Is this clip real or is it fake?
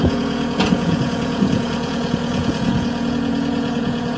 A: fake